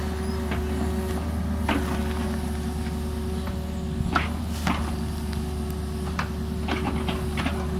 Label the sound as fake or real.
real